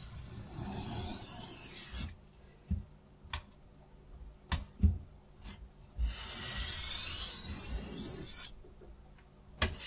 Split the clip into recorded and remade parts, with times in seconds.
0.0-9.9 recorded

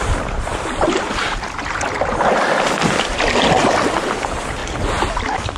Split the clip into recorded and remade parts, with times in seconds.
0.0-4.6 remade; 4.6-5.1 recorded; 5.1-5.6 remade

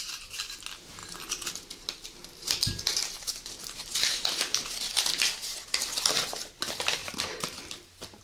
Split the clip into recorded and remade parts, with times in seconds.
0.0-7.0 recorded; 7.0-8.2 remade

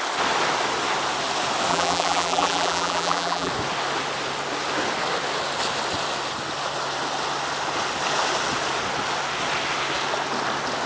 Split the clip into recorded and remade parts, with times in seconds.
0.0-1.7 recorded; 1.7-3.5 remade; 3.5-10.9 recorded